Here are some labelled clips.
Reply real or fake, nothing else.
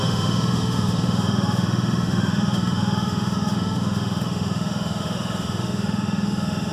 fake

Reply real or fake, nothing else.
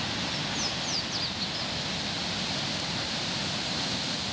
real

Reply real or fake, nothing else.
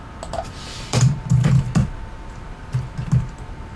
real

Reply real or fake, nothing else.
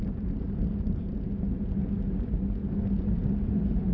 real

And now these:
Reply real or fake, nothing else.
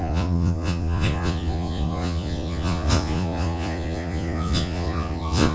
fake